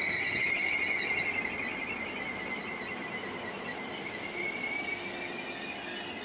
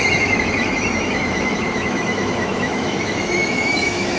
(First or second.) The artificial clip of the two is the second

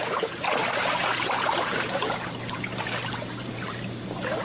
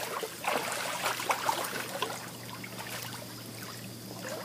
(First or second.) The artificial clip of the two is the first